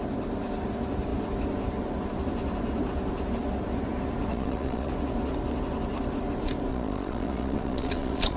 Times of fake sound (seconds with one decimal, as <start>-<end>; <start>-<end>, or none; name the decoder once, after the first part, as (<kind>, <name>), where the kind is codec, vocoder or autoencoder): 4.3-4.9 (vocoder, Vocos); 6.7-8.4